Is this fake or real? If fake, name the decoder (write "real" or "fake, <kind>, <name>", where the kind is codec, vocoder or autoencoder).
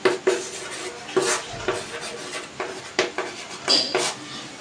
real